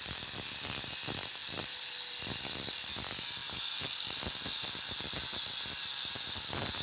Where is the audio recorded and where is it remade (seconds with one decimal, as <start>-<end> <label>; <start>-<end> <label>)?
0.0-6.8 recorded